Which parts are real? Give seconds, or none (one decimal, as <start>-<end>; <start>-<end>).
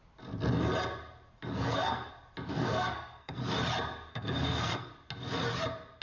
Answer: 0.0-1.5; 2.1-2.5; 3.4-4.1; 4.9-6.0